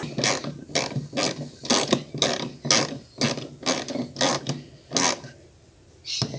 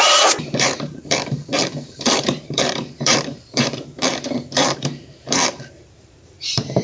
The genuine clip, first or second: first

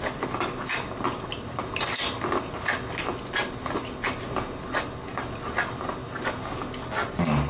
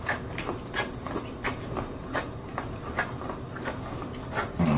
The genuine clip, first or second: first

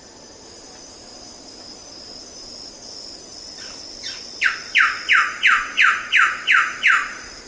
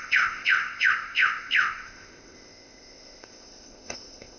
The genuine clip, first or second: first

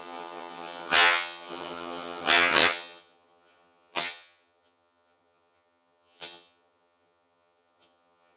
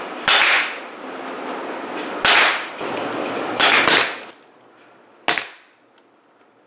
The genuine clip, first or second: second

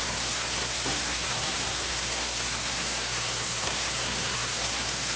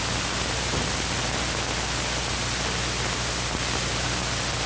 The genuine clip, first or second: second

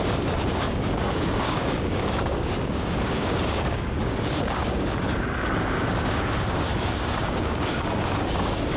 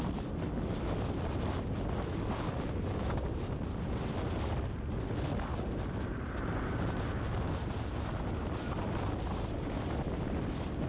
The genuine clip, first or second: second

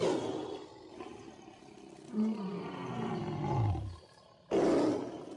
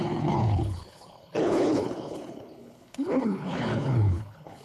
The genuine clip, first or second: first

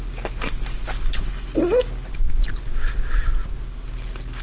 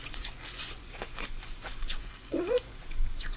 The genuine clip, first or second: first